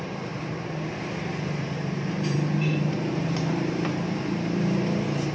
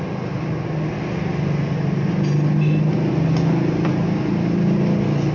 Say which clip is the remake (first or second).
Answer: first